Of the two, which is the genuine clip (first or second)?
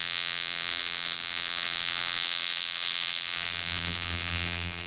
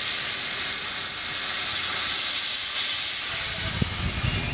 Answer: second